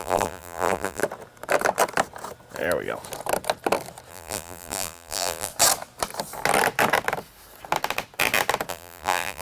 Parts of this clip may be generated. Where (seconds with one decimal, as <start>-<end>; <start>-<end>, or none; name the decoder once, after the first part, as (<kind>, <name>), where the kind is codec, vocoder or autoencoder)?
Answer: 0.0-1.0 (vocoder, BigVGAN v2); 4.1-5.5; 8.7-9.4